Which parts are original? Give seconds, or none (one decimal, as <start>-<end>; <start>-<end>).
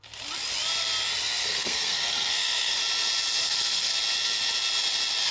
0.0-1.4; 2.8-3.4; 3.9-5.3